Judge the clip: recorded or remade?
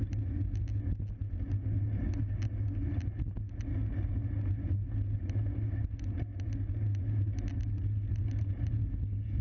recorded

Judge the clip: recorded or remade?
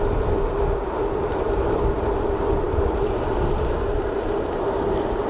recorded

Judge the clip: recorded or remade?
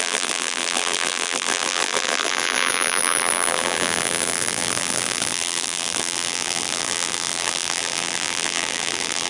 remade